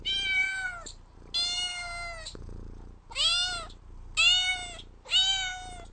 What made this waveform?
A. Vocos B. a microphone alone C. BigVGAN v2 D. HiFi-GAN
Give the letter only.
B